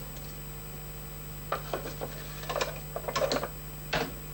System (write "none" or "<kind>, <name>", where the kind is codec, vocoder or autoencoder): none